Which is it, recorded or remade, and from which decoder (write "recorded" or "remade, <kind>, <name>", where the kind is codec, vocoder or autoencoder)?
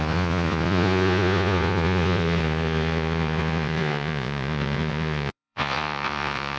remade, vocoder, Vocos